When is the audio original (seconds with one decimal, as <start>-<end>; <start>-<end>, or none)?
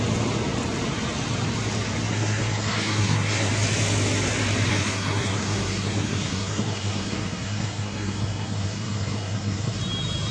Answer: 0.0-2.1; 3.5-4.7; 9.8-10.3